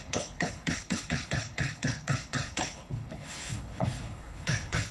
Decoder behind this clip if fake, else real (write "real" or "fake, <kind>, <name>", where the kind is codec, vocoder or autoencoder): fake, codec, HILCodec